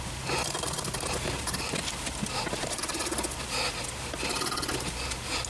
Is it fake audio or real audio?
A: real